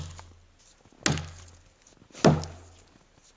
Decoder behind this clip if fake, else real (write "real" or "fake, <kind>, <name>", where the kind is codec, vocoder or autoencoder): real